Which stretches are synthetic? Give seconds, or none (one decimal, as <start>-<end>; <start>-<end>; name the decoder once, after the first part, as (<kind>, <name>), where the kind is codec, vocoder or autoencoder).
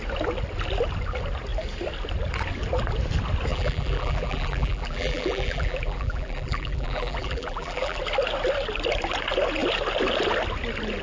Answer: 3.5-8.0 (vocoder, BigVGAN v2)